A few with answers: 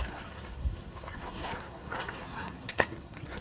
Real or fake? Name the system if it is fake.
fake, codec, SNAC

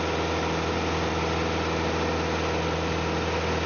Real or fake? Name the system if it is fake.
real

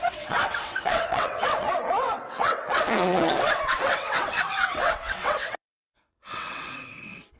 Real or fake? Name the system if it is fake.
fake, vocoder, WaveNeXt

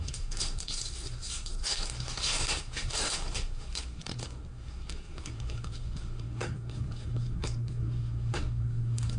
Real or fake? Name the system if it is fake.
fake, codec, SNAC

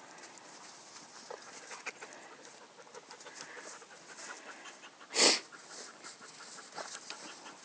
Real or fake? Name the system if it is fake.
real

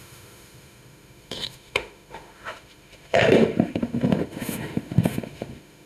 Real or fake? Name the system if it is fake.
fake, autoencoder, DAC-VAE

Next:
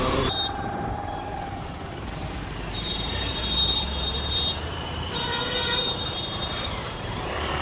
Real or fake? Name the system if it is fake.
fake, vocoder, BigVGAN v2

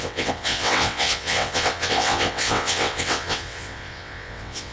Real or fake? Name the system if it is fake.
fake, vocoder, WaveNeXt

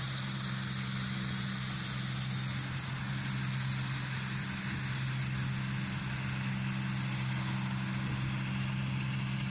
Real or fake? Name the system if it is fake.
real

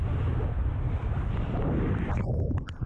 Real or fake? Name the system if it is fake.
real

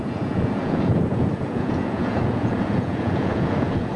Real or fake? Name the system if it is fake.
fake, vocoder, Vocos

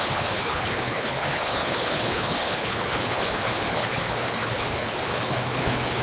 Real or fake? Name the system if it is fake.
fake, codec, HILCodec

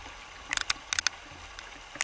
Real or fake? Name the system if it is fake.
real